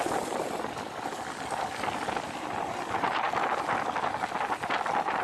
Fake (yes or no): no